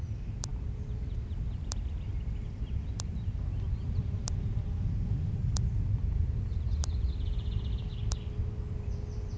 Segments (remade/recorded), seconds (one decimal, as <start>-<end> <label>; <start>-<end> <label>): 0.0-5.4 remade; 5.4-6.0 recorded; 6.0-9.4 remade